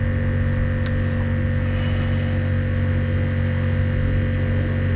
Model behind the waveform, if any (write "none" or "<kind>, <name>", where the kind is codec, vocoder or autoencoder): none